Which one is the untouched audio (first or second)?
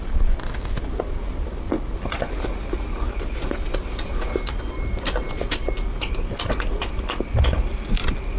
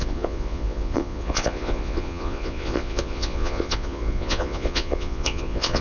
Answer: first